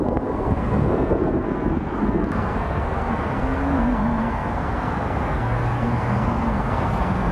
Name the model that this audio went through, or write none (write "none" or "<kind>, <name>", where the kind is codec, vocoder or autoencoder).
codec, SNAC